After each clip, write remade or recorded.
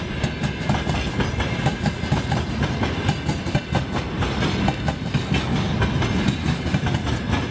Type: recorded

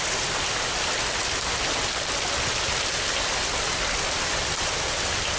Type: recorded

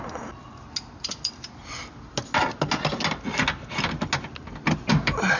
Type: recorded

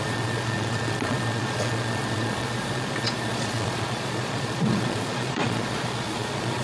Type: remade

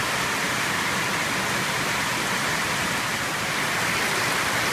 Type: recorded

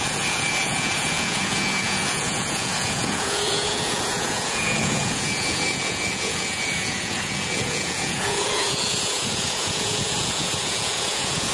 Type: remade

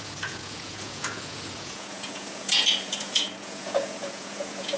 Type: remade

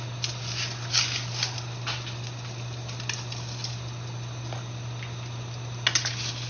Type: recorded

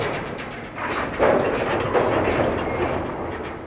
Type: recorded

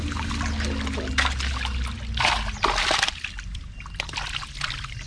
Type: recorded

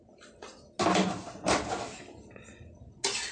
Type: recorded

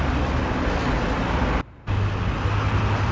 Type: recorded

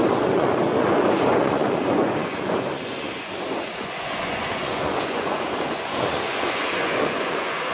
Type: remade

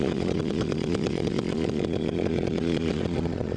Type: remade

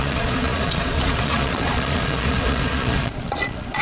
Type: remade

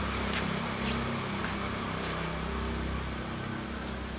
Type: recorded